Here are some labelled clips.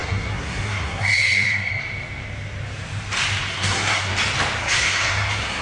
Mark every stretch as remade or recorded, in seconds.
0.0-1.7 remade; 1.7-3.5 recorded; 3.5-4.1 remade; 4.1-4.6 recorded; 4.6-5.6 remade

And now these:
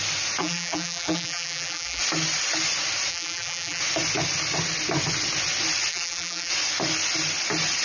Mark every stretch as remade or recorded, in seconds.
0.0-0.4 recorded; 0.4-2.0 remade; 2.0-3.1 recorded; 3.1-3.8 remade; 3.8-5.9 recorded; 5.9-6.5 remade; 6.5-7.8 recorded